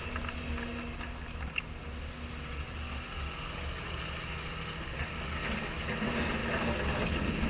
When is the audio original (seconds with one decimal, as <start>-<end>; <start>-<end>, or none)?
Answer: 0.0-7.5